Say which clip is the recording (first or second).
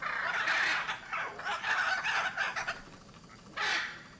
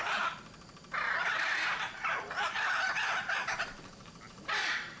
first